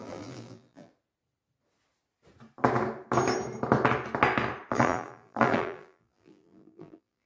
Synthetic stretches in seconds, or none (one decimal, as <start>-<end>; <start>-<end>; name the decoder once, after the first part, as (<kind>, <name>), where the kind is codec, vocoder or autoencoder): 0.0-0.9 (vocoder, BigVGAN v2); 4.7-7.3